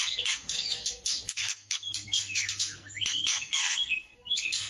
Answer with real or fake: fake